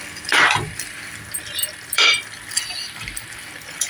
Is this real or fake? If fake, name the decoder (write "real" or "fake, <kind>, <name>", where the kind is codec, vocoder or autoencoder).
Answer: fake, vocoder, BigVGAN v2